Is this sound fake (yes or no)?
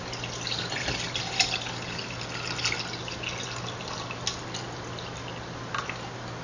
no